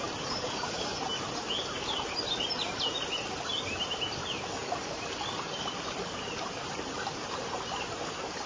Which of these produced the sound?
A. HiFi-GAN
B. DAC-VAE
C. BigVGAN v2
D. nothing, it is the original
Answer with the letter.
D